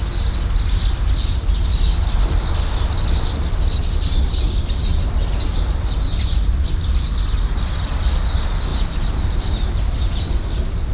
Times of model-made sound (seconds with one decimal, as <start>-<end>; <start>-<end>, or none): none